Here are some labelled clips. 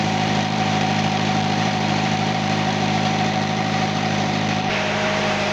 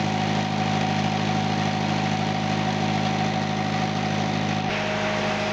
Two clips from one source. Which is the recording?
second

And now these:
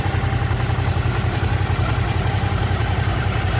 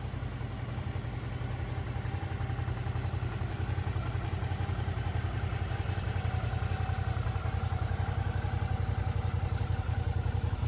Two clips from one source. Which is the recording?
second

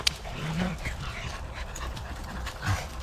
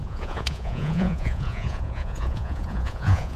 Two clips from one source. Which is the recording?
first